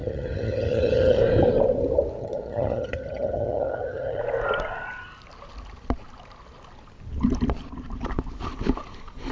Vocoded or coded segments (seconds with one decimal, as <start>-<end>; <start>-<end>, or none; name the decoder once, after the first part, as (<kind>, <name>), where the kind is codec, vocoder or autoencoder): 0.0-1.2 (vocoder, HiFi-GAN); 2.2-4.2